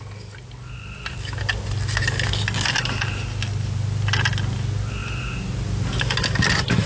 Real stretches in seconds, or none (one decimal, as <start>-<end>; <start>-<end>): 0.0-6.9